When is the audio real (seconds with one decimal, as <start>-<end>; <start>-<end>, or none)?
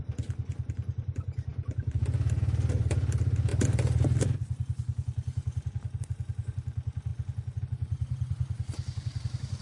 none